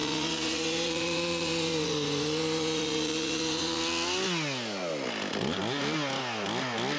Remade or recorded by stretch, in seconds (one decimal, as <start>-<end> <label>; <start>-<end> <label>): 0.0-3.8 remade; 3.8-7.0 recorded